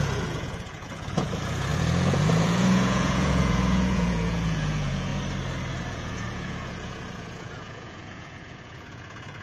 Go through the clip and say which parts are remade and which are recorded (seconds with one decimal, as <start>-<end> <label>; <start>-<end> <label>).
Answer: 0.0-5.1 remade; 5.1-5.9 recorded; 5.9-9.4 remade